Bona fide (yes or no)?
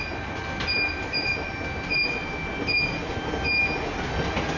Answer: yes